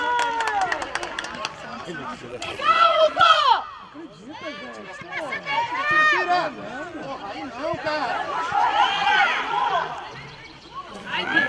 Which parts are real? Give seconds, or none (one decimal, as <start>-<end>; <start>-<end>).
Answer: 0.0-2.3; 3.4-8.7